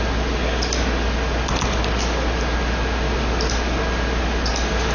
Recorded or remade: recorded